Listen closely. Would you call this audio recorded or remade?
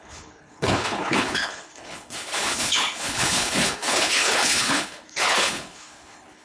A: remade